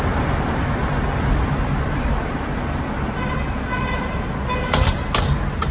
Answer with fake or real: real